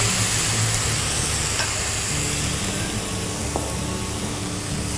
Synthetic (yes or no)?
no